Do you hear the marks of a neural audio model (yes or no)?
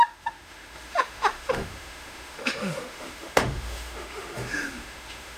yes